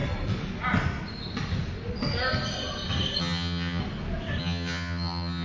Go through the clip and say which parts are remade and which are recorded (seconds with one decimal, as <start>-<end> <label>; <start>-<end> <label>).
0.0-3.2 recorded; 3.2-3.8 remade; 3.8-4.4 recorded; 4.4-5.4 remade